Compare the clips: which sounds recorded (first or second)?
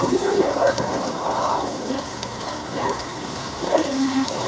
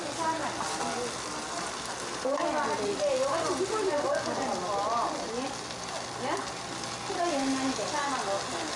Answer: second